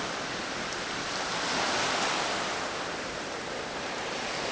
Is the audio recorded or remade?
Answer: remade